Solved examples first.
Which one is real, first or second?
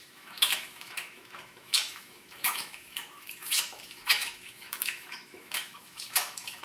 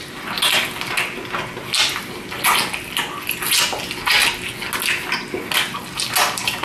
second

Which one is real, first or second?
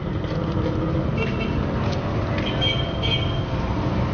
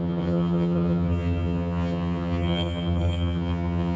first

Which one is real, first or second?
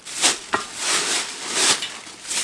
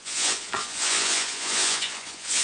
first